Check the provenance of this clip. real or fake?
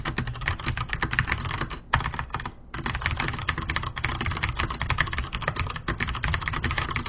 real